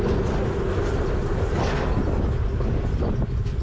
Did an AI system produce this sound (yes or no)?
no